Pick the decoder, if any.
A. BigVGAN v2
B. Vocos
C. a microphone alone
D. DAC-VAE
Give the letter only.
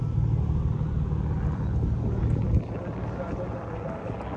C